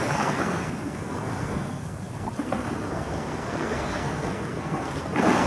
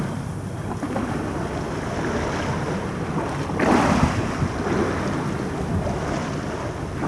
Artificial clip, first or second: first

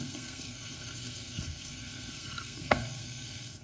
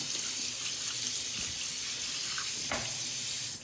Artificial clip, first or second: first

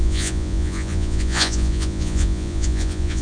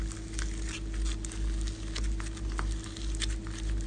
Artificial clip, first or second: first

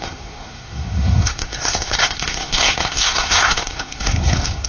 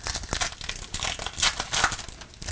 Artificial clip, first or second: first